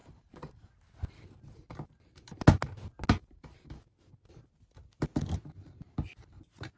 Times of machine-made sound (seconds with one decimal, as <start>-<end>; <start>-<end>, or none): 0.0-0.7; 3.2-3.8